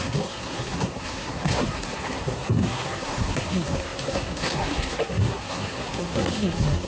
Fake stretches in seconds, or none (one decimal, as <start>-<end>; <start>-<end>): 0.0-6.9